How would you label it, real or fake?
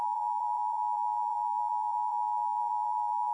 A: fake